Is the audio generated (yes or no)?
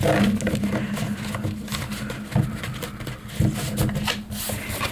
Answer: no